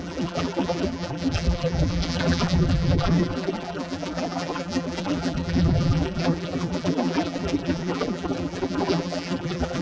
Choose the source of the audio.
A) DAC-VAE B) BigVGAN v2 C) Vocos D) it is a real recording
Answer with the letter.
B